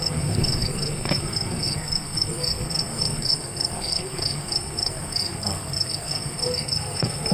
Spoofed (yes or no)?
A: yes